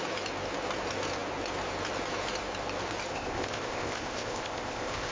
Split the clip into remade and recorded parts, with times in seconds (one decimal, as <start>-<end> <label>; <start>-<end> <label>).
0.0-3.1 recorded; 3.1-5.1 remade